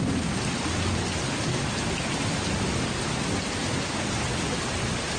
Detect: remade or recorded recorded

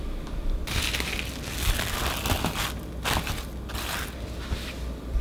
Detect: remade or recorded recorded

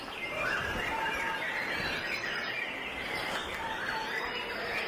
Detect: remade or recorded remade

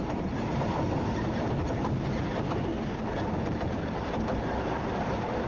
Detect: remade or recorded remade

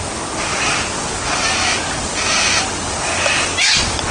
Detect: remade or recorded recorded